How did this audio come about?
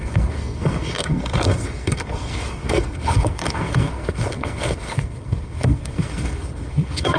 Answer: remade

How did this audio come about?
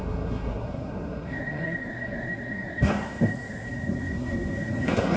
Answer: remade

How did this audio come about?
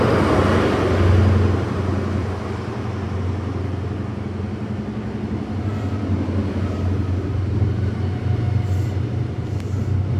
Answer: recorded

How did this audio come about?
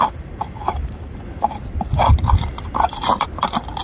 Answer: recorded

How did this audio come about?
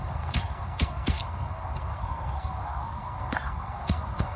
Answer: remade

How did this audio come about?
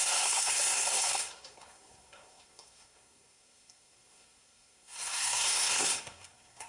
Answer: remade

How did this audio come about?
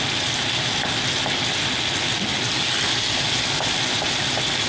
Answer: recorded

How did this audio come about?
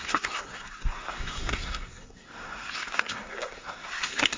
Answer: remade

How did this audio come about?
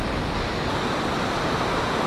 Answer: recorded